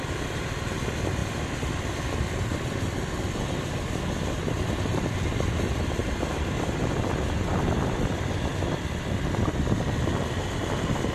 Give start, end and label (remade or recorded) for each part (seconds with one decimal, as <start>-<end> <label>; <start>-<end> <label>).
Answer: 0.0-6.0 recorded; 6.0-6.9 remade; 6.9-11.1 recorded